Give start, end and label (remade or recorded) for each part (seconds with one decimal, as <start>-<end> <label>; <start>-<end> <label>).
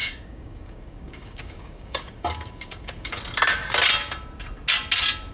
0.0-3.2 remade; 3.2-5.3 recorded